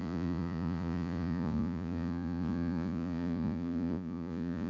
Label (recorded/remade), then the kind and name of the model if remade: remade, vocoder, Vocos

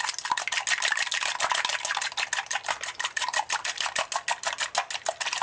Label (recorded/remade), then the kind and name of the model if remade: recorded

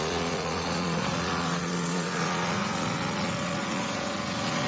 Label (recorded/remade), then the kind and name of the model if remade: remade, vocoder, Vocos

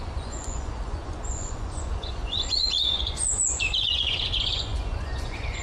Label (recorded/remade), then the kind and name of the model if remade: remade, vocoder, Vocos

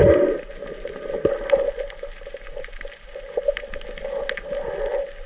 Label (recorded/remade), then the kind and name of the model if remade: recorded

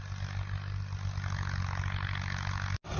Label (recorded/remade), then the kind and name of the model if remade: recorded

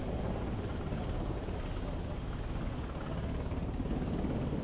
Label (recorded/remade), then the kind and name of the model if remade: recorded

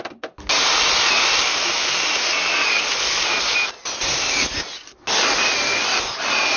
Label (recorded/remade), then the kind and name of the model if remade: recorded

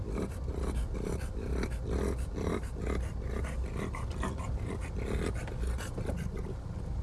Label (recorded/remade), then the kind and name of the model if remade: recorded